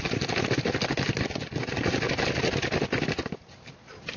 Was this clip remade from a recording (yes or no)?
no